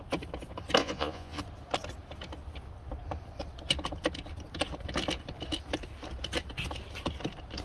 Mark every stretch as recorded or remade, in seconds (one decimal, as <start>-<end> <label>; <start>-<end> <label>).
0.0-0.8 recorded; 0.8-1.4 remade; 1.4-7.6 recorded

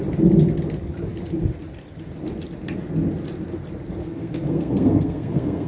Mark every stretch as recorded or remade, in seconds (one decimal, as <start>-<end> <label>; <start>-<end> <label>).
0.0-4.0 recorded; 4.0-5.7 remade

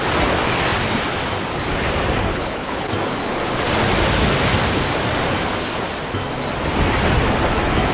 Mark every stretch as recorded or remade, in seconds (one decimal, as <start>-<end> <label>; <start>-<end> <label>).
0.0-2.3 recorded; 2.3-2.9 remade; 2.9-7.9 recorded

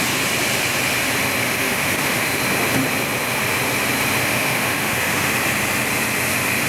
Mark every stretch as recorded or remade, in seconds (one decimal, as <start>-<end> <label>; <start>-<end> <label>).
0.0-1.4 recorded; 1.4-2.4 remade; 2.4-4.2 recorded; 4.2-5.3 remade; 5.3-6.7 recorded

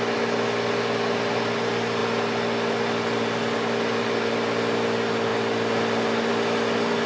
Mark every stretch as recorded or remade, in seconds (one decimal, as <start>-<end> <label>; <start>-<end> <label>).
0.0-7.1 recorded